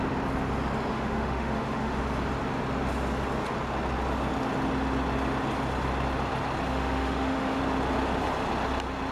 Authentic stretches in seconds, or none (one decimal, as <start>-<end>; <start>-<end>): 0.0-0.9; 2.0-6.7; 7.6-9.1